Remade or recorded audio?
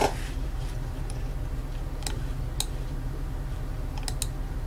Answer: recorded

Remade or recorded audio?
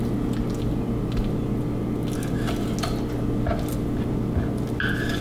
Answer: recorded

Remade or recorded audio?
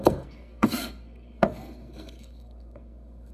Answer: remade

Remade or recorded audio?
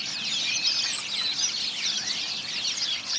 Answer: recorded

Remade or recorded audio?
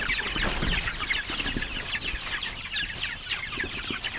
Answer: recorded